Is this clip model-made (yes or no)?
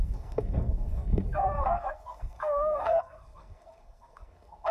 yes